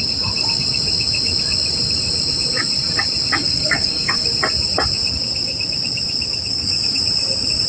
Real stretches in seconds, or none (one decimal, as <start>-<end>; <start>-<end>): 0.0-3.4; 4.3-6.5; 7.0-7.7